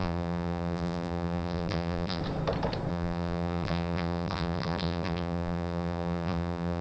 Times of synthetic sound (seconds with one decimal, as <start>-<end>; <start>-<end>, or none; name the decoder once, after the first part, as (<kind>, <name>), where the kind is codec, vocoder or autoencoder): 0.0-2.2 (vocoder, BigVGAN v2); 2.9-6.8